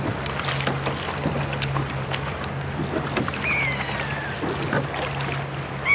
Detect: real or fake real